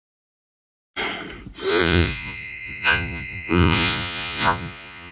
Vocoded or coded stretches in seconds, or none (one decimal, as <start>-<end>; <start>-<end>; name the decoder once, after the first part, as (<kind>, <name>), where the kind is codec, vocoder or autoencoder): 1.7-5.1 (vocoder, Vocos)